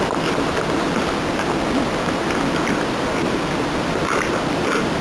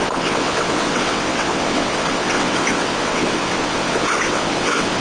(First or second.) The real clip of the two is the first